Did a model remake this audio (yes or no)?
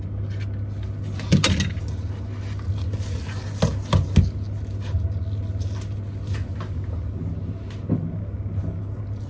no